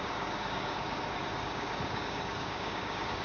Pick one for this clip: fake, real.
fake